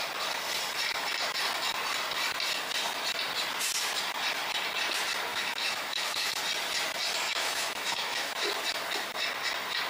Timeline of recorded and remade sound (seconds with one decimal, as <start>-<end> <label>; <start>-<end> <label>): 0.0-5.3 recorded; 5.3-6.4 remade; 6.4-7.3 recorded; 7.3-8.5 remade; 8.5-9.9 recorded